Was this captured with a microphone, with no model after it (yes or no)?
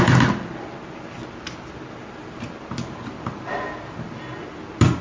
yes